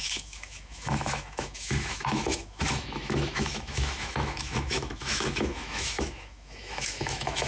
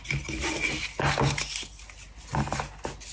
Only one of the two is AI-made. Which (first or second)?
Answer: first